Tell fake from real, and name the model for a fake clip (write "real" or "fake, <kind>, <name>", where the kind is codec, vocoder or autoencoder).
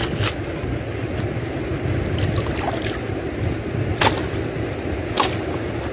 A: real